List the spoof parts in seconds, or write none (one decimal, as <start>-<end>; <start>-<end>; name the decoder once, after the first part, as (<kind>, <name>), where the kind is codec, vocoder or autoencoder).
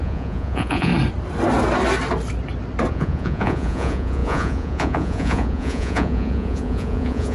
0.0-0.9 (vocoder, Vocos); 2.9-7.3